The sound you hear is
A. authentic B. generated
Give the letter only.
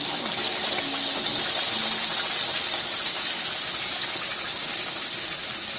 A